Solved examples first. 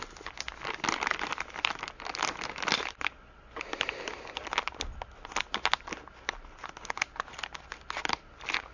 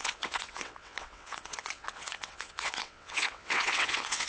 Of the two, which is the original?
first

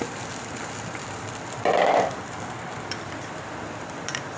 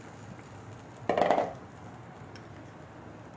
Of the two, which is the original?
second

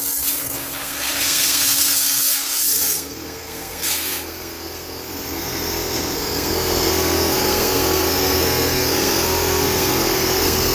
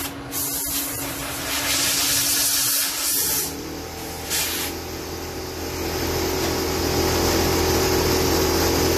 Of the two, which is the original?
second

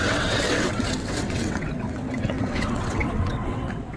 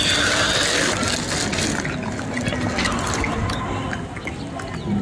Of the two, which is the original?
second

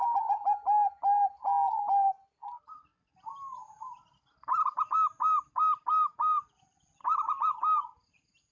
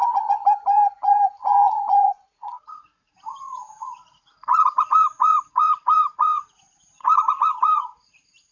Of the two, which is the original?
first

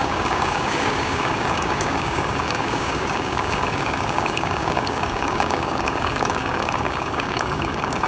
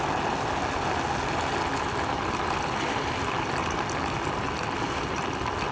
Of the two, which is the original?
second